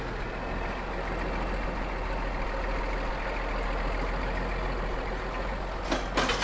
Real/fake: real